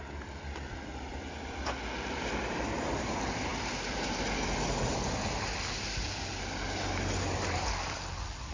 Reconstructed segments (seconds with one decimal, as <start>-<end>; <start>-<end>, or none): 0.0-3.5; 7.4-8.5